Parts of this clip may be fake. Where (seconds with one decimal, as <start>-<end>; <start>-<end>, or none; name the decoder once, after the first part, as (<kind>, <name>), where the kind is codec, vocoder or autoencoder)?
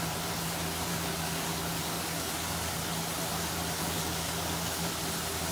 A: 0.9-2.8 (codec, DAC); 3.8-4.9